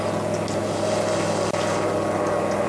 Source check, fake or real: real